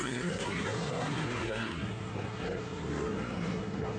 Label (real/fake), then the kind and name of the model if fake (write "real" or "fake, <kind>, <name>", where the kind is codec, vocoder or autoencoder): fake, codec, SNAC